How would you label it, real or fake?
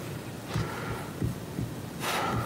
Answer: real